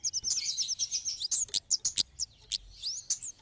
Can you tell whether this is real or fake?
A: real